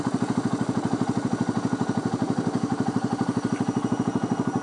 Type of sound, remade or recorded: recorded